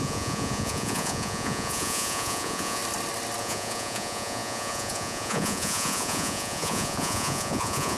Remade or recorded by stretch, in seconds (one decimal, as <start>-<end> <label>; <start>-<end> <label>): 0.0-2.8 remade; 2.8-3.4 recorded; 3.4-8.0 remade